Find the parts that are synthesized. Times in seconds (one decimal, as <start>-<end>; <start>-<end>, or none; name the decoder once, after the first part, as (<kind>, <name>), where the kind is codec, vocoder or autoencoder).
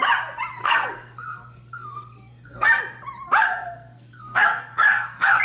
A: 0.6-2.8 (codec, SNAC); 3.4-5.4